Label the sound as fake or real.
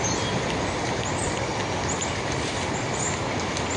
real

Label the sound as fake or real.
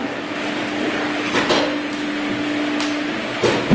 real